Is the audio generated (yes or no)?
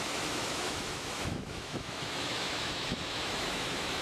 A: yes